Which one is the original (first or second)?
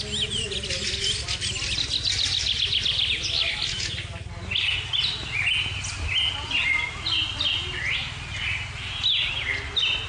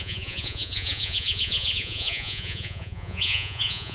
first